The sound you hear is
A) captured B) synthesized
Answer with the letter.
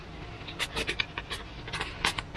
A